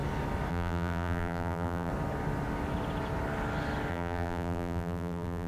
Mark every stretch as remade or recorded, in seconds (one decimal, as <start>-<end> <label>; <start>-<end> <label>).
0.0-0.5 recorded; 0.5-1.9 remade; 1.9-3.9 recorded; 3.9-5.5 remade

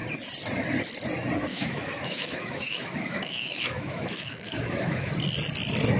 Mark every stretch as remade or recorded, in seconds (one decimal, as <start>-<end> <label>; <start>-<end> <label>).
0.0-1.5 recorded; 1.5-5.1 remade; 5.1-6.0 recorded